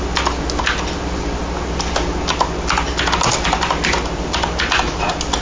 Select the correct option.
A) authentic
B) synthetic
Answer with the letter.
A